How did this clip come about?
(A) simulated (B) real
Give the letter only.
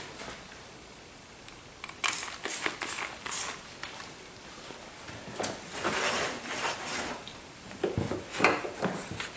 B